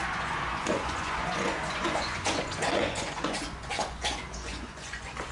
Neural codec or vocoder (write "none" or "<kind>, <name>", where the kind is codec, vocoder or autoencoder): vocoder, Vocos